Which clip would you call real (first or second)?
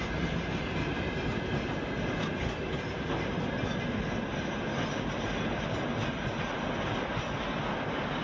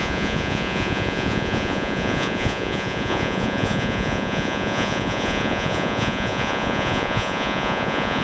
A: first